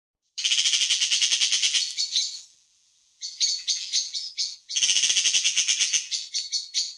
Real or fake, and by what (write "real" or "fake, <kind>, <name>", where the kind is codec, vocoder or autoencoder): fake, vocoder, BigVGAN v2